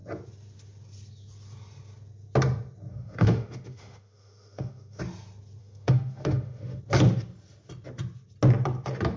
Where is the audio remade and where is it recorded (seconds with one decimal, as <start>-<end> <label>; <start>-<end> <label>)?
0.0-2.9 recorded; 2.9-5.0 remade; 5.0-5.6 recorded; 5.6-6.8 remade; 6.8-9.2 recorded